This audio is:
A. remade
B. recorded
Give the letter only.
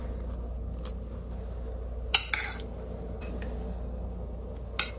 B